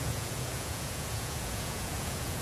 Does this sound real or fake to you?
fake